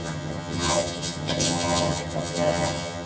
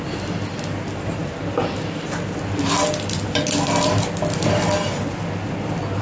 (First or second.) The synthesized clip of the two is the first